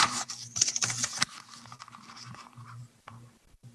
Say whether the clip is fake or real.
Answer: fake